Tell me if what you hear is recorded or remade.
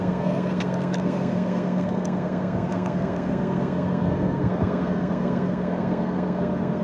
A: remade